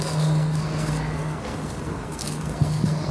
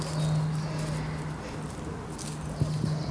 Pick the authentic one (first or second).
second